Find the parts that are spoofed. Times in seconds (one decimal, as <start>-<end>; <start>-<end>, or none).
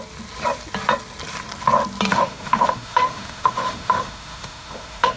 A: 2.1-5.2